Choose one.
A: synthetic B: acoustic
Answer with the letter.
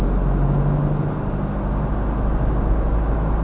B